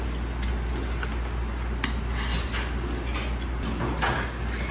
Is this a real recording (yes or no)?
yes